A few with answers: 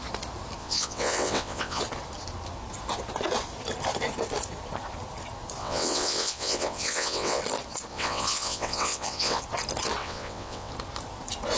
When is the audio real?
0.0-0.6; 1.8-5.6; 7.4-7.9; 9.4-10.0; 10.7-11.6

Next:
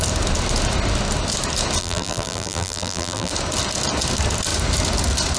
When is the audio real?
0.0-1.8; 3.3-5.4

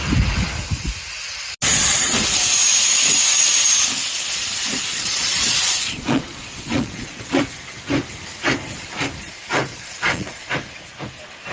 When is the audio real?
0.0-4.9; 7.4-9.7; 10.5-11.5

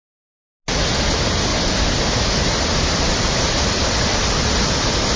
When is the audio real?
0.0-5.2

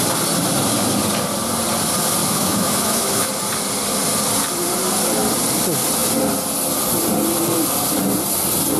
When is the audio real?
0.0-2.2; 3.3-8.8